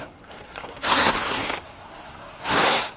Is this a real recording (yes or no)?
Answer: no